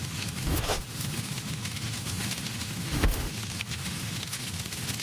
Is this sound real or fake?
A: fake